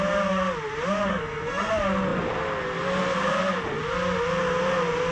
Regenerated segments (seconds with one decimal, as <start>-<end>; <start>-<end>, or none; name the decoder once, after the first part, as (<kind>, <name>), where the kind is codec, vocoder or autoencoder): 1.1-1.7 (codec, SNAC)